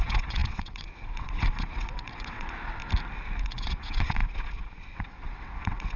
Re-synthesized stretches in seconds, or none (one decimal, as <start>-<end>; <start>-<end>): 0.0-2.8; 3.4-4.2; 4.8-6.0